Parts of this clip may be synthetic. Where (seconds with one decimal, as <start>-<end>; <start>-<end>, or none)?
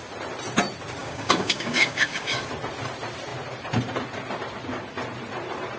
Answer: 1.0-2.5